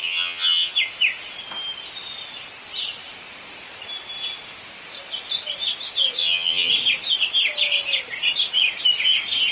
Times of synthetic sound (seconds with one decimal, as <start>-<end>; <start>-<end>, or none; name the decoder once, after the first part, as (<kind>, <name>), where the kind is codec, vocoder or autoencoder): 0.0-0.7 (vocoder, HiFi-GAN); 6.2-6.7